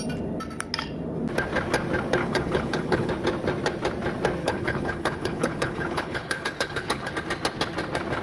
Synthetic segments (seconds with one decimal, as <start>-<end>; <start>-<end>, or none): 2.2-3.1; 4.4-7.1